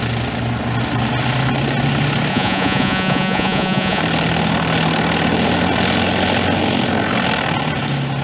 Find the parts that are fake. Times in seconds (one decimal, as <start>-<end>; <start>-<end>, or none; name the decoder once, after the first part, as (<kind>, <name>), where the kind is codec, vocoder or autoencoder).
2.3-4.0 (vocoder, Vocos)